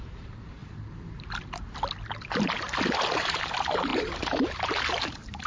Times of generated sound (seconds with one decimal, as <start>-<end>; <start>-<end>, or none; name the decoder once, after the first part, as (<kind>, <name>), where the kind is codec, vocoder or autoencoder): 0.0-0.6 (vocoder, BigVGAN v2); 3.0-5.5